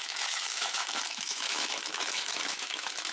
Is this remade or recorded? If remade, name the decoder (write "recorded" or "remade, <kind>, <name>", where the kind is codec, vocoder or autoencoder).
remade, autoencoder, DAC-VAE